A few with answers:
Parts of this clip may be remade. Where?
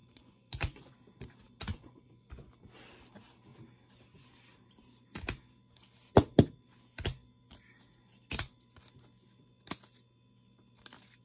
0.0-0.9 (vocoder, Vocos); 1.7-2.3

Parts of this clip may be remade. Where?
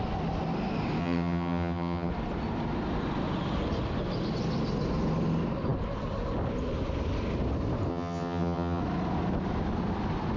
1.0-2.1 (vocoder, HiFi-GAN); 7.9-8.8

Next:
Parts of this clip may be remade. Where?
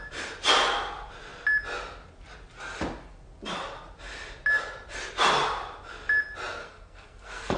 6.6-7.6 (codec, SNAC)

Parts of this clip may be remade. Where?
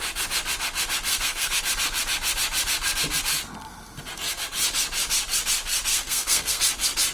1.1-1.6 (codec, SNAC); 5.9-6.6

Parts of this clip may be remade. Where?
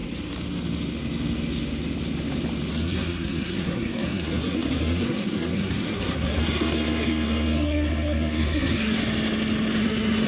2.7-9.0 (codec, SNAC); 9.8-10.3